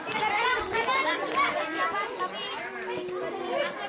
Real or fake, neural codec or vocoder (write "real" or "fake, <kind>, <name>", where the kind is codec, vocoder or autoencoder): real